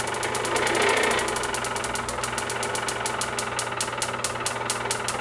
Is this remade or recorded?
recorded